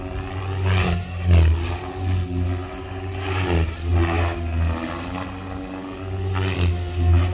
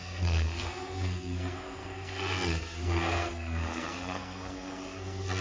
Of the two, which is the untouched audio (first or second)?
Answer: first